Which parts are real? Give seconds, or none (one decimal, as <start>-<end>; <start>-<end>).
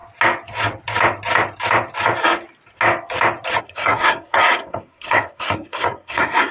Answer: 0.0-3.6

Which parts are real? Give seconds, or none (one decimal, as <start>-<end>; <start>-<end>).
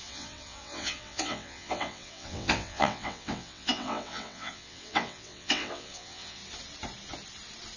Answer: 6.4-7.8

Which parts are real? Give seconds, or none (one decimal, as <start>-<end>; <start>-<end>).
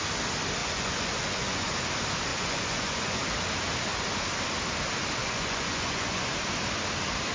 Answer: 0.0-0.6; 1.7-2.3; 3.2-5.2; 6.3-7.3